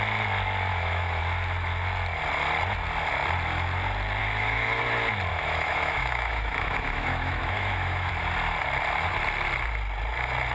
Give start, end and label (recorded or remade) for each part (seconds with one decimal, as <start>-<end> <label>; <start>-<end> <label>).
0.0-0.7 recorded; 0.7-1.2 remade; 1.2-4.2 recorded; 4.2-4.8 remade; 4.8-5.3 recorded; 5.3-8.1 remade; 8.1-10.5 recorded